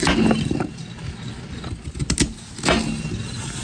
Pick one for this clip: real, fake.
real